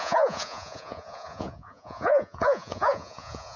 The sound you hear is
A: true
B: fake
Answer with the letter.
B